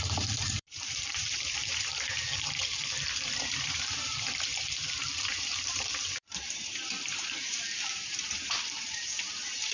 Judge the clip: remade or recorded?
remade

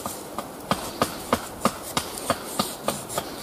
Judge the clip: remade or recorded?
recorded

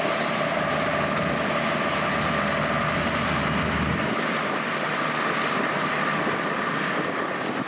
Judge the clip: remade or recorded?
recorded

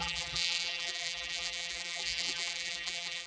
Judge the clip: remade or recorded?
remade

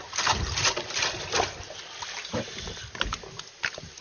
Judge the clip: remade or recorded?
recorded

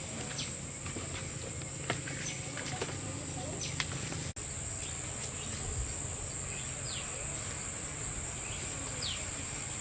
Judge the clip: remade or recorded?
recorded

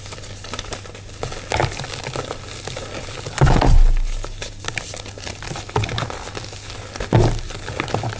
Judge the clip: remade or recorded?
recorded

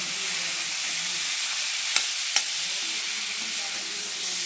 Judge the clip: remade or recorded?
recorded